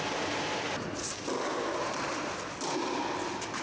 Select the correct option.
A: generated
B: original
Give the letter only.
B